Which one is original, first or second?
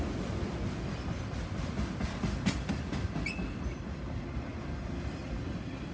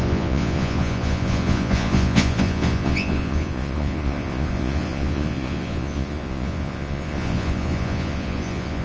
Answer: first